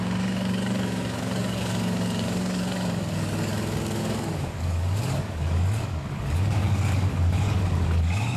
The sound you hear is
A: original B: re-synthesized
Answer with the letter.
B